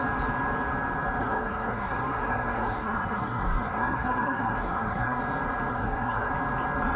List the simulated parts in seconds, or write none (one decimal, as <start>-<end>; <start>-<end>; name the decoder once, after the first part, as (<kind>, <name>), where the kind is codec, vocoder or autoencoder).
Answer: 1.2-5.2 (codec, SNAC); 5.7-6.3